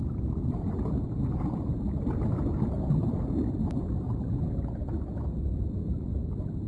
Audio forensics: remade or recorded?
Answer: recorded